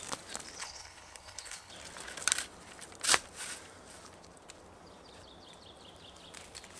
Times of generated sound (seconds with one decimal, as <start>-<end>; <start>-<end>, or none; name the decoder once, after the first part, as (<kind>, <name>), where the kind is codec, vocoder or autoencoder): 0.6-1.7 (codec, HILCodec)